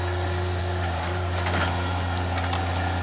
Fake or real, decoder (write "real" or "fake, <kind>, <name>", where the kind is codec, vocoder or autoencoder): real